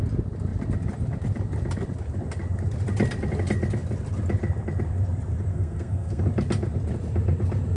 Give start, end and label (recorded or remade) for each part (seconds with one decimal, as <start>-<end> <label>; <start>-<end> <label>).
0.0-5.5 recorded; 5.5-6.2 remade; 6.2-7.8 recorded